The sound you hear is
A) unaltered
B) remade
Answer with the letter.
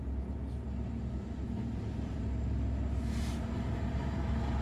A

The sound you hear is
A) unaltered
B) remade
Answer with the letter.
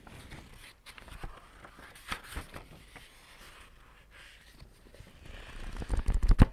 A